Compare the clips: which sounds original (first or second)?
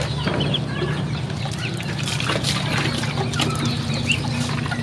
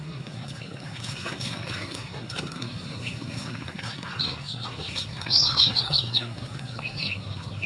first